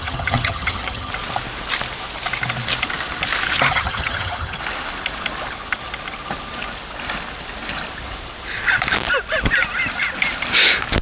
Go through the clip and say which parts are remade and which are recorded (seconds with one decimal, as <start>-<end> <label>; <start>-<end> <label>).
0.0-1.1 remade; 1.1-3.7 recorded; 3.7-4.6 remade; 4.6-11.0 recorded